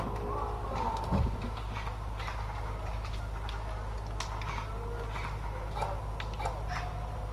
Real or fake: real